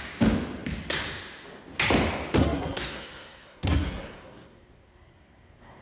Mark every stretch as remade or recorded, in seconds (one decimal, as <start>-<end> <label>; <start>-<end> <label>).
0.0-2.4 recorded; 2.4-5.8 remade